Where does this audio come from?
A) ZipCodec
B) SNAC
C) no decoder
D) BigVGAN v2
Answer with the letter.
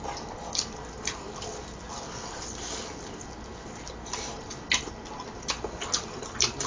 C